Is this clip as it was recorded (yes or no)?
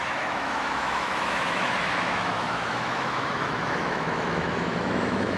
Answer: no